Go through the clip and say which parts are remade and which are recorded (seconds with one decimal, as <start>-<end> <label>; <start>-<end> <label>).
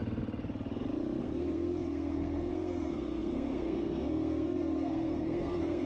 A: 0.0-1.2 recorded; 1.2-5.9 remade